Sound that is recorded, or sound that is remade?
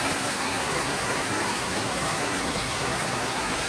remade